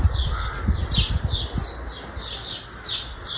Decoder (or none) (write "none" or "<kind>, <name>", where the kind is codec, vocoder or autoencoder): none